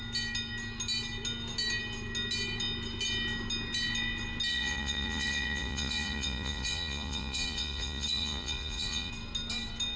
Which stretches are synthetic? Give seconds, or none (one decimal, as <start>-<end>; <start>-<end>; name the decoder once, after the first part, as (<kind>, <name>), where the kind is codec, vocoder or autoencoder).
4.5-9.1 (vocoder, Vocos)

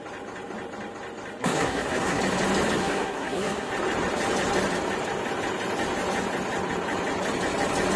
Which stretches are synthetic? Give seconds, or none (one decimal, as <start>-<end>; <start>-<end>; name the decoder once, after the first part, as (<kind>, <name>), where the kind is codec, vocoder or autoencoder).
1.4-2.2 (codec, SNAC); 2.8-3.7

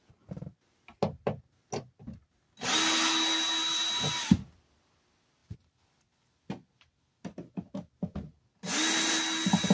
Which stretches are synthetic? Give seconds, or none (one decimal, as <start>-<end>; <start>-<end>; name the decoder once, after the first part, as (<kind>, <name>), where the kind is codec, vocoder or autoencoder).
none